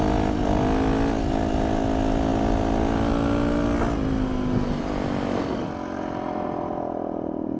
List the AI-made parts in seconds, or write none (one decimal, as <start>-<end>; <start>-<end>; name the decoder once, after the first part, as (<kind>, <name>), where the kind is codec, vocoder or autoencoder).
none